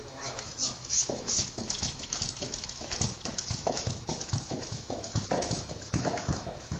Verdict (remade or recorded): remade